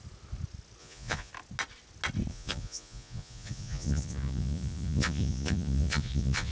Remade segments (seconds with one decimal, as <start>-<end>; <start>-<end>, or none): 0.8-1.3; 2.3-6.5